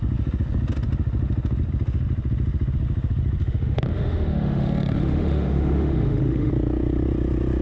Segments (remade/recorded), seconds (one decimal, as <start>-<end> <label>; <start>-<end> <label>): 0.0-3.4 recorded; 3.4-6.5 remade; 6.5-7.6 recorded